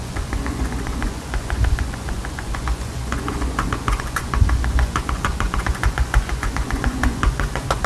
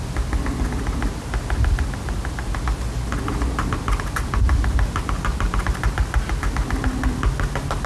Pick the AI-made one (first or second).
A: first